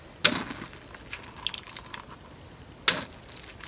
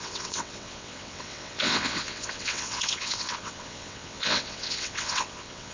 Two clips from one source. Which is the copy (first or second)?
second